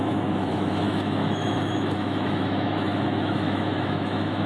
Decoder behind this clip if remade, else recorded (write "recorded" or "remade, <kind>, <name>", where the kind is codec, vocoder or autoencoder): remade, autoencoder, DAC-VAE